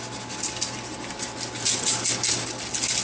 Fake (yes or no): no